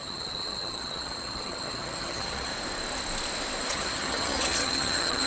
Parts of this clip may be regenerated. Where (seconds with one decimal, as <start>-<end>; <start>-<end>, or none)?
0.0-2.5; 3.7-5.3